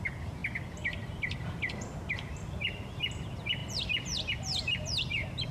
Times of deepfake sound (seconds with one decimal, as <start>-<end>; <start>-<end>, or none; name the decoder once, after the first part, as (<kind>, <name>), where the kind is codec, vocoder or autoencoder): 0.0-0.4 (vocoder, BigVGAN v2); 1.7-5.5